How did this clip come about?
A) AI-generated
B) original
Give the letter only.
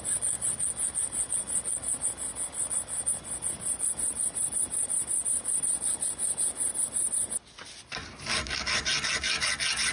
B